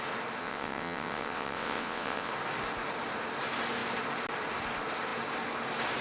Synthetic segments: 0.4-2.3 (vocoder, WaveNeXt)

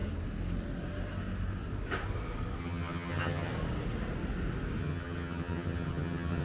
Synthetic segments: 2.6-3.5 (vocoder, HiFi-GAN); 4.8-6.4

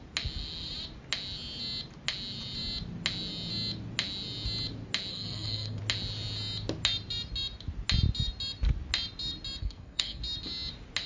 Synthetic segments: 5.1-5.8 (codec, SNAC); 9.6-10.2

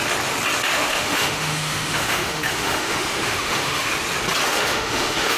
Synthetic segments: 0.7-3.9 (autoencoder, DAC-VAE); 4.5-5.4

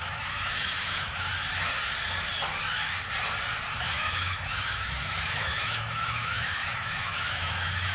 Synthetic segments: 0.0-1.3 (autoencoder, DAC-VAE); 3.8-7.9